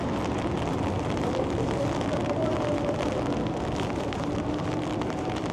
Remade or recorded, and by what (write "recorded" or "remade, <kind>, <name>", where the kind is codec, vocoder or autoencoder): recorded